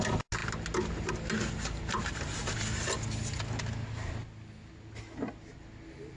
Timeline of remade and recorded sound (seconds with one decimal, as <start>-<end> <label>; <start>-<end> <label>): 0.0-6.2 recorded